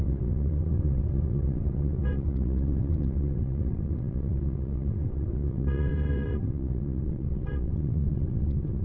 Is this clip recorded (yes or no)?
no